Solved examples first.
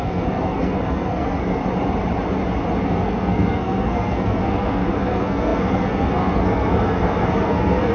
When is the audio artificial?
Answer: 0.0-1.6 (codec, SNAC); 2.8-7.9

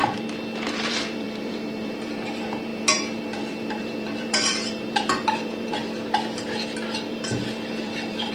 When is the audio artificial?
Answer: 0.7-5.8 (vocoder, BigVGAN v2); 7.1-8.3

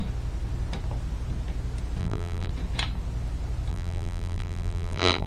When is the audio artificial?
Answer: 2.0-2.5 (vocoder, BigVGAN v2); 3.7-5.3

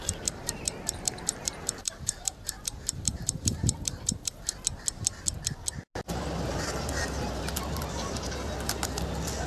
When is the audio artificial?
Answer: 0.0-4.5 (vocoder, BigVGAN v2)